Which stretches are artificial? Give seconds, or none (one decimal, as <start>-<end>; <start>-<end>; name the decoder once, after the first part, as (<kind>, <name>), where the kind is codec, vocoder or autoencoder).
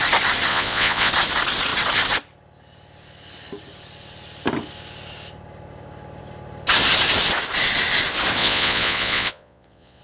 0.5-1.1 (vocoder, Vocos); 8.4-10.0